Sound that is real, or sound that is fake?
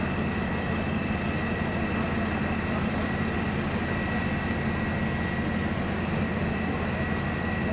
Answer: real